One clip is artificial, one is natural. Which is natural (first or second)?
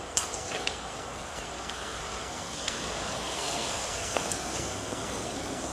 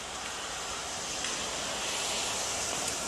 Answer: second